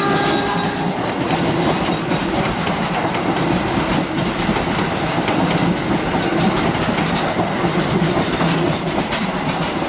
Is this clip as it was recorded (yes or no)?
yes